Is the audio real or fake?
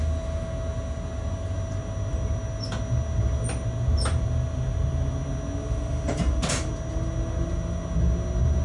real